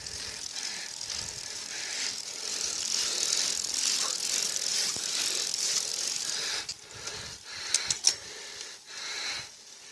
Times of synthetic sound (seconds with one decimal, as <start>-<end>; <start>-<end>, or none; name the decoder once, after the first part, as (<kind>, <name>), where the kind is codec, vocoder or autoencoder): 4.7-5.9 (vocoder, BigVGAN v2)